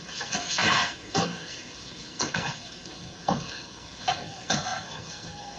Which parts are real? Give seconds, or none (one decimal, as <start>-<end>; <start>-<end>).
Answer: none